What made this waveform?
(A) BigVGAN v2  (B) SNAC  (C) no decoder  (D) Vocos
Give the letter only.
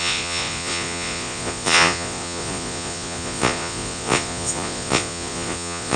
D